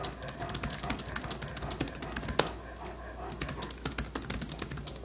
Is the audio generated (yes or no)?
no